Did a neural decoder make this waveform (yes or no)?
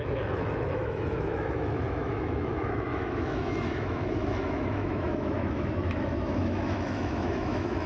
yes